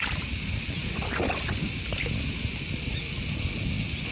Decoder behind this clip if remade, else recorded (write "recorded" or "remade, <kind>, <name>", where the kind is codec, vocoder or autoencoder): recorded